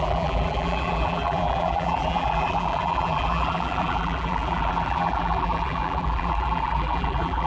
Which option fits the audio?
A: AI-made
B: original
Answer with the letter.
A